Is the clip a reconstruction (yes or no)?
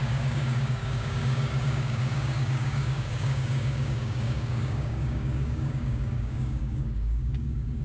yes